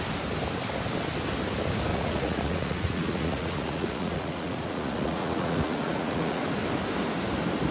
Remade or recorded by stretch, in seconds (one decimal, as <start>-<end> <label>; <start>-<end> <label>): 0.0-1.9 recorded; 1.9-6.4 remade; 6.4-7.7 recorded